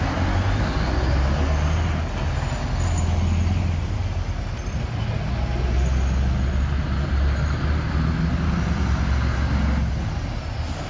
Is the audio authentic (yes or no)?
yes